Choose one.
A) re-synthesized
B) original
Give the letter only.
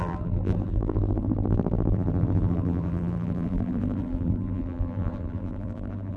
A